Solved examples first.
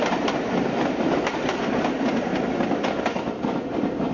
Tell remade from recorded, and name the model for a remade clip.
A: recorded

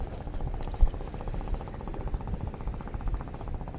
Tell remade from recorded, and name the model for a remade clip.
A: recorded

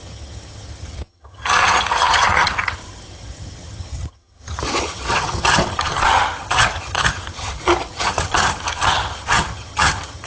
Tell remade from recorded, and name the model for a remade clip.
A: remade, vocoder, HiFi-GAN